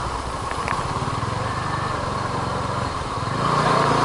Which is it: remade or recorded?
remade